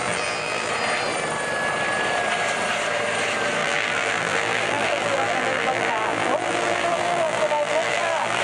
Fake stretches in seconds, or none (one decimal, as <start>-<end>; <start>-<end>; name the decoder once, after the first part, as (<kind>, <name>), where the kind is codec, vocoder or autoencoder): 0.0-0.7 (vocoder, BigVGAN v2); 3.6-8.4